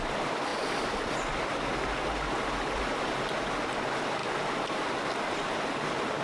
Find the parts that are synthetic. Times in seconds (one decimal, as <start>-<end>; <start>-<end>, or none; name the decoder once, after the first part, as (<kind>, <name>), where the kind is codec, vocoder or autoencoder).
none